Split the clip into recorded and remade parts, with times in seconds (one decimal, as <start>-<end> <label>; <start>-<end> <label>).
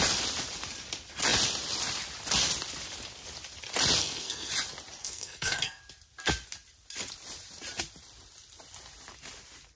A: 0.0-4.0 recorded; 4.0-4.5 remade; 4.5-5.0 recorded; 5.0-5.8 remade; 5.8-9.8 recorded